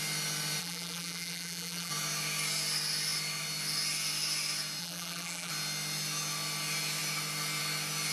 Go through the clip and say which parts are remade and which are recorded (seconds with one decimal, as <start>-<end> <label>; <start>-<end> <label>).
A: 0.0-0.6 recorded; 0.6-1.9 remade; 1.9-4.8 recorded; 4.8-5.5 remade; 5.5-8.1 recorded